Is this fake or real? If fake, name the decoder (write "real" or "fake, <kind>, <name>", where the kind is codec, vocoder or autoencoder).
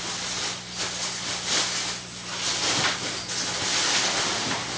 real